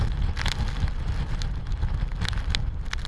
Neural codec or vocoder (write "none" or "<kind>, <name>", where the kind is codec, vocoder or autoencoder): none